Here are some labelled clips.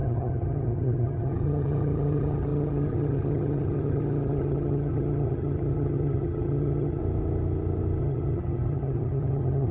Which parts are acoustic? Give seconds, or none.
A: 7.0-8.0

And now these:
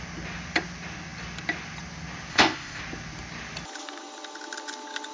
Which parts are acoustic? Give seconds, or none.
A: 0.0-2.3; 2.8-5.1

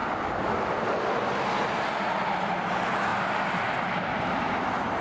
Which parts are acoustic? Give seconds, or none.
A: 0.0-5.0

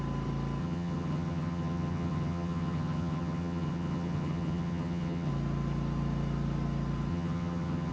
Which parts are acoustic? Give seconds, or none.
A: 0.0-0.6; 5.3-7.1

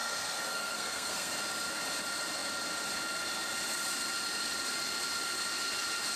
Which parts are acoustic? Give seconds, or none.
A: 1.3-6.2

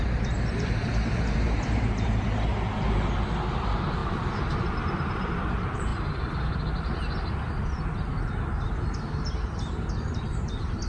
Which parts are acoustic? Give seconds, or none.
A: 2.5-3.5; 5.9-10.1

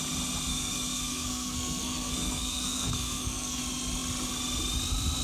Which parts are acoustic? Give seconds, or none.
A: 0.0-0.5; 3.6-5.2

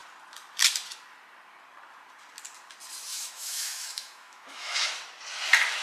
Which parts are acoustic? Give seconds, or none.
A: 0.0-3.1; 4.9-5.8